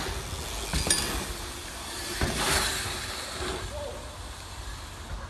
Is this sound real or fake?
real